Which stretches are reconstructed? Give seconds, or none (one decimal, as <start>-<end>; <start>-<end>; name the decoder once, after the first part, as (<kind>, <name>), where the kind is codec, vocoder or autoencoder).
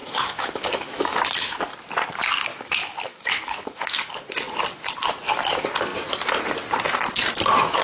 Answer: 0.0-1.6 (autoencoder, DAC-VAE); 2.5-4.1